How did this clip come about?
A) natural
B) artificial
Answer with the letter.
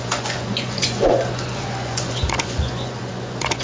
B